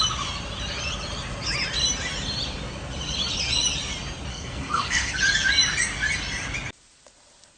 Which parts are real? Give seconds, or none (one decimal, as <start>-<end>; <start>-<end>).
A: 0.0-4.3; 5.2-7.6